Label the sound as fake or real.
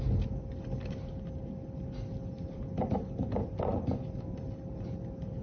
real